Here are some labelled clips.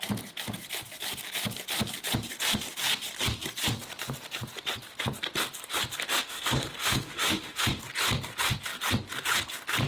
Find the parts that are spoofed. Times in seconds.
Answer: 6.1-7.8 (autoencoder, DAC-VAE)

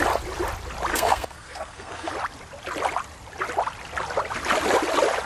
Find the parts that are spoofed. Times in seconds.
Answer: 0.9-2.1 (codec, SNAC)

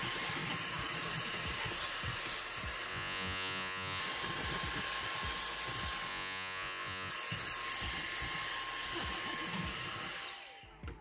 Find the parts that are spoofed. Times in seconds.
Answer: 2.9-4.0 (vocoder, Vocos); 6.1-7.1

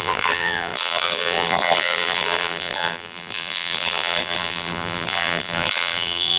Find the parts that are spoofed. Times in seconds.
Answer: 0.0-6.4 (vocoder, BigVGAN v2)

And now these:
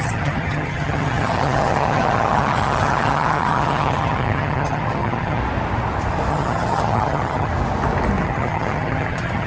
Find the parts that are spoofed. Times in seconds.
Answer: 0.0-5.4 (vocoder, HiFi-GAN); 6.3-7.5; 8.2-9.5

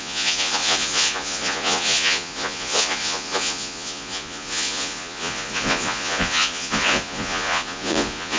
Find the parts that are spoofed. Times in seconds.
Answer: 0.0-8.4 (vocoder, Vocos)

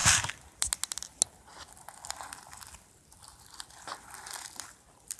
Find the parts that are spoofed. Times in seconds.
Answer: none